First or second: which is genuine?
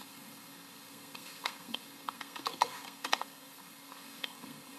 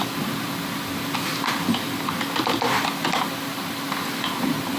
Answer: second